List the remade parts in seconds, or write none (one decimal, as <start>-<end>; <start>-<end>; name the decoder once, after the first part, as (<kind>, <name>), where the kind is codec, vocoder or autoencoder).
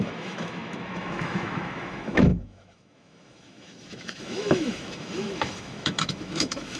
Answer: 0.0-6.8 (autoencoder, DAC-VAE)